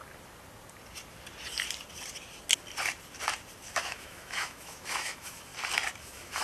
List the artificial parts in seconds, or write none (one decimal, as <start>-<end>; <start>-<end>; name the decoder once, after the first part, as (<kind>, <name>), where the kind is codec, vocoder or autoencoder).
3.8-5.5 (autoencoder, DAC-VAE); 6.0-6.4